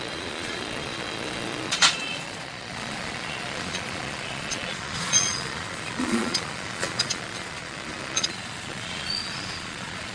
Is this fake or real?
fake